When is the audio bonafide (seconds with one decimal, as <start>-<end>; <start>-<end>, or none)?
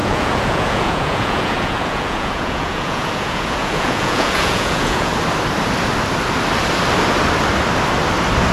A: 5.1-8.5